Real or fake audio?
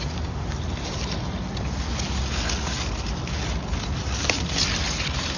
real